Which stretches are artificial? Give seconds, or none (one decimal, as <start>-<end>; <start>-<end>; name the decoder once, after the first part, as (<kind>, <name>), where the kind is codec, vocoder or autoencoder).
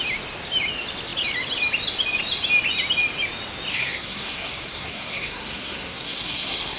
3.7-6.8 (codec, SNAC)